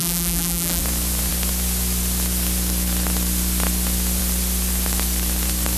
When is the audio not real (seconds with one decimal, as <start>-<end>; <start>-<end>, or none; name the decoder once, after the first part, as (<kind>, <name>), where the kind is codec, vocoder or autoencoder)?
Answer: 0.0-0.8 (vocoder, BigVGAN v2)